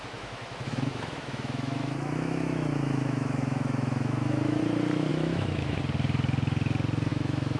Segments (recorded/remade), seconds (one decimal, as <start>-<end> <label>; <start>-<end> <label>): 0.0-4.6 remade; 4.6-5.1 recorded; 5.1-5.8 remade; 5.8-7.1 recorded; 7.1-7.6 remade